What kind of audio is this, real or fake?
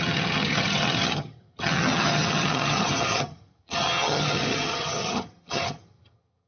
fake